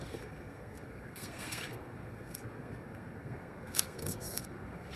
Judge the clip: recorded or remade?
remade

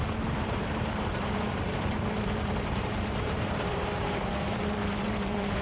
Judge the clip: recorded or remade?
remade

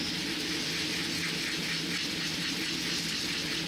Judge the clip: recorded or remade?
recorded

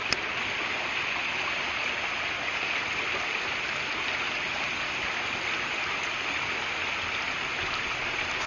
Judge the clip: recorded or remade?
recorded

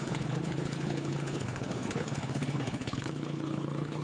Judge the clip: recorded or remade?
remade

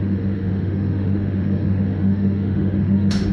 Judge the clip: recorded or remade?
remade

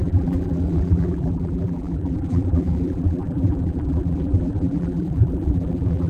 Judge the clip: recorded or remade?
remade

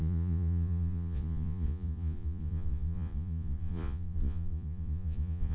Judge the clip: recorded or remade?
remade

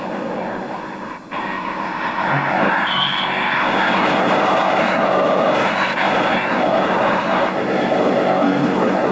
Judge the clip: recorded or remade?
remade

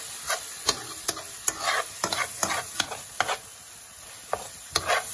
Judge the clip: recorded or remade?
recorded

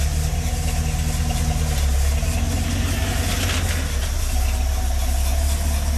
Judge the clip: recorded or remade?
recorded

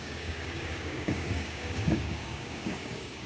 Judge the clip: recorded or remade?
remade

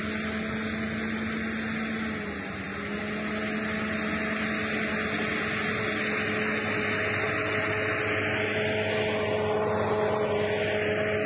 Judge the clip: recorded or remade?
recorded